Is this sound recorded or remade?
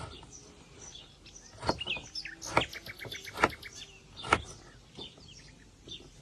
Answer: recorded